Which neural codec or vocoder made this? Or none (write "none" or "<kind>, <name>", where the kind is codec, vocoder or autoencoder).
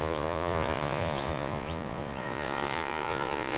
vocoder, Vocos